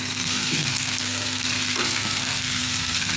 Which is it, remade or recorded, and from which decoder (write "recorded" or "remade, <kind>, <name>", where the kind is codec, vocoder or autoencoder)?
remade, codec, SNAC